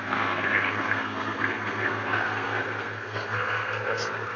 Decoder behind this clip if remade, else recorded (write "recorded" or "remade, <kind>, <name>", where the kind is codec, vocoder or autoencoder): remade, codec, SNAC